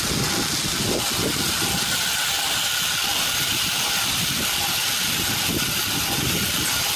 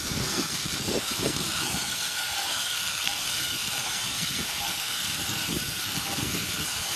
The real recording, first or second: first